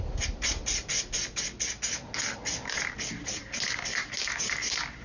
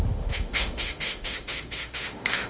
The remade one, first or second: second